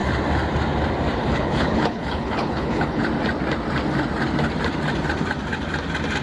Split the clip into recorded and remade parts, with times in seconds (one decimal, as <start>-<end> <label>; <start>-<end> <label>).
0.0-1.2 recorded; 1.2-3.0 remade; 3.0-6.2 recorded